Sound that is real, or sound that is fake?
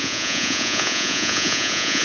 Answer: fake